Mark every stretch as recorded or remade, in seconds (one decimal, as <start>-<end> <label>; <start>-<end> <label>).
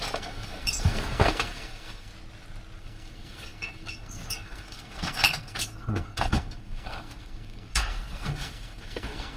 0.0-2.1 remade; 2.1-2.8 recorded; 2.8-9.4 remade